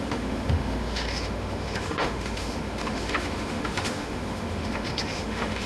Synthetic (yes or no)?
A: yes